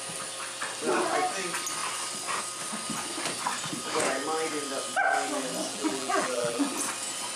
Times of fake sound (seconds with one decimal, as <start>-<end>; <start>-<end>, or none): 5.7-6.7